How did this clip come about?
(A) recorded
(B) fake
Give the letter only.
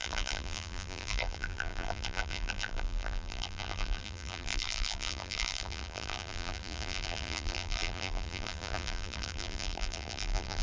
B